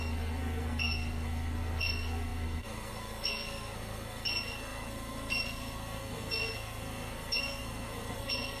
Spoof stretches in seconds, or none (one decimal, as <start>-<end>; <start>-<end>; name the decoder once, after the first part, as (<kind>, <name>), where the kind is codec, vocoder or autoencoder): 0.0-8.6 (codec, SNAC)